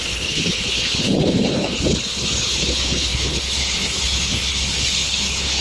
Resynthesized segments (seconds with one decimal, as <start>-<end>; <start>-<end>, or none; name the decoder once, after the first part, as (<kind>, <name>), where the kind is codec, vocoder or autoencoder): 0.0-5.6 (codec, HILCodec)